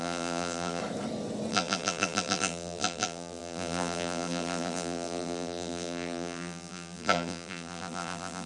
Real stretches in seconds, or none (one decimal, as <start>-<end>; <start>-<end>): 0.8-1.5